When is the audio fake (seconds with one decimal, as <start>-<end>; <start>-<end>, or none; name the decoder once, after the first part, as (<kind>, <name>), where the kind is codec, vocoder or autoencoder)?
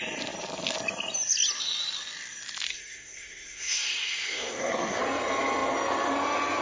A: 2.7-5.0 (codec, SNAC)